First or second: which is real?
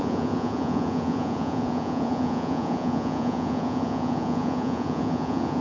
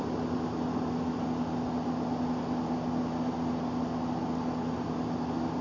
second